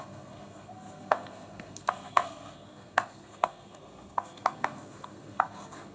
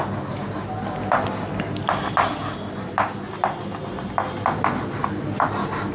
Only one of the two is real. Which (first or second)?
second